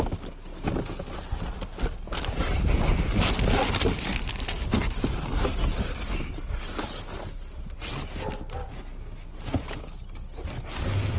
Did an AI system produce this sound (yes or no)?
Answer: no